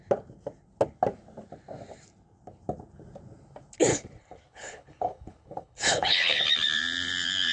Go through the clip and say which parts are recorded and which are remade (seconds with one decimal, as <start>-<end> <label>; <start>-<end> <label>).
0.0-3.9 recorded; 3.9-6.4 remade; 6.4-7.5 recorded